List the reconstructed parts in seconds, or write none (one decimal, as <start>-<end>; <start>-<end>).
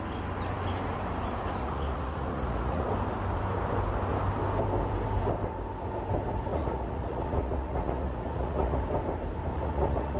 1.6-2.9; 6.5-8.8; 9.5-10.2